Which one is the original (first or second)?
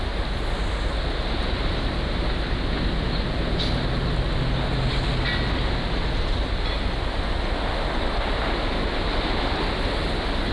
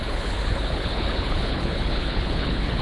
first